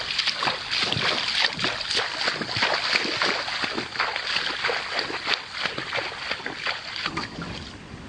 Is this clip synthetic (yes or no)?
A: no